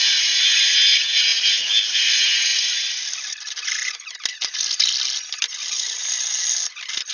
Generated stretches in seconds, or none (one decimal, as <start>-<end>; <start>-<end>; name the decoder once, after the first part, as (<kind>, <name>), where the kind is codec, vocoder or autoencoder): none